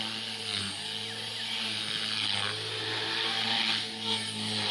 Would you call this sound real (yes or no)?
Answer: yes